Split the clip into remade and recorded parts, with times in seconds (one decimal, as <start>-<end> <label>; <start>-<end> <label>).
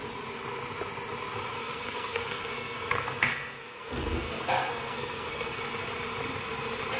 0.0-1.6 recorded; 1.6-5.6 remade; 5.6-7.0 recorded